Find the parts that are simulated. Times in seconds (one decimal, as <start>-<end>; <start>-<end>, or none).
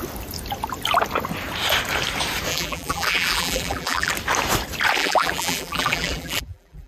2.5-4.1; 5.0-6.9